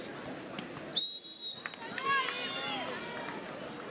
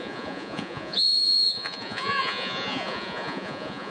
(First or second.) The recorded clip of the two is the first